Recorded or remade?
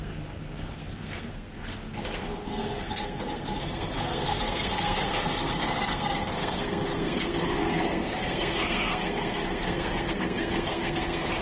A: remade